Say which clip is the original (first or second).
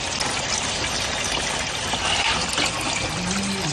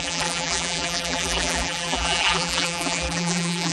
first